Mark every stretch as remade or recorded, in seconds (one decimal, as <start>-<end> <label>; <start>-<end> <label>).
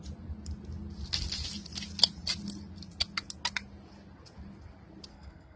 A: 0.0-5.1 recorded; 5.1-5.6 remade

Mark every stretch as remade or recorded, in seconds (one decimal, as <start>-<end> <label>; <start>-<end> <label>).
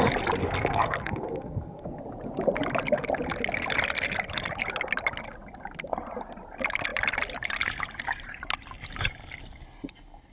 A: 0.0-0.4 recorded; 0.4-2.0 remade; 2.0-10.3 recorded